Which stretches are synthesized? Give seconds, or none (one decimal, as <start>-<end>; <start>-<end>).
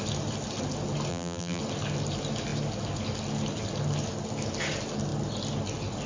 1.1-1.6